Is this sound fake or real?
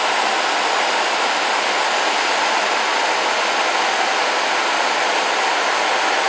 real